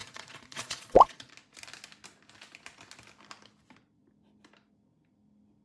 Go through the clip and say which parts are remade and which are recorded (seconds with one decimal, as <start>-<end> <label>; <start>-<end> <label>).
0.0-1.3 remade; 1.3-5.6 recorded